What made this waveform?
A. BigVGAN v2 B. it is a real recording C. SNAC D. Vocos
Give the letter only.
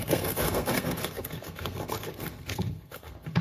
C